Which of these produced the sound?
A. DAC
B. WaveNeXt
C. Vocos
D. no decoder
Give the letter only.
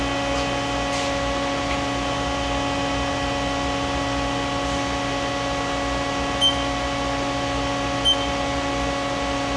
D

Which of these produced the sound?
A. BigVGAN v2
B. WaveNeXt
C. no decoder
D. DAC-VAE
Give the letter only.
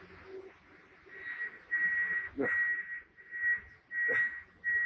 C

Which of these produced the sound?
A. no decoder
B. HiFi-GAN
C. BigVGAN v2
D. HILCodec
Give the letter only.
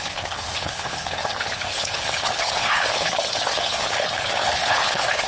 D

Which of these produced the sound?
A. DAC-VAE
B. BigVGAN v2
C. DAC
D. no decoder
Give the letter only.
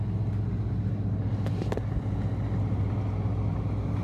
D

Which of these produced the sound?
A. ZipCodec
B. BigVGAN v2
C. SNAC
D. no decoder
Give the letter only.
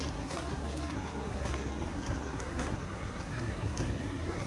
C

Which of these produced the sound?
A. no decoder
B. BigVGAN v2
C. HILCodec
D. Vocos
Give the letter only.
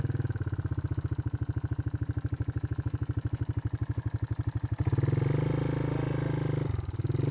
A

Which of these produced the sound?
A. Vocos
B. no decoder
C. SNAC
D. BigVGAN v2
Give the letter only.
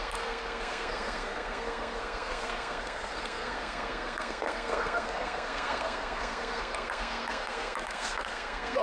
C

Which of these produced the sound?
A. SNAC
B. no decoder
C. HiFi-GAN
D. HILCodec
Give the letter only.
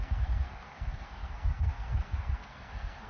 A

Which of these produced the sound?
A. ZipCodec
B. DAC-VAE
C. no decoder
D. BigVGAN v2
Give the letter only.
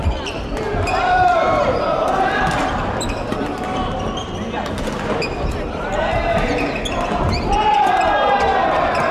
C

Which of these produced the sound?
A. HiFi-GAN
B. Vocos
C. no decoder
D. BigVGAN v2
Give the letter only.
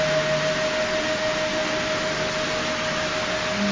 C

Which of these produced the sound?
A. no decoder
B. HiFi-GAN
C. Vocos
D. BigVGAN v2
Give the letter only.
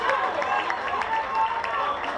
A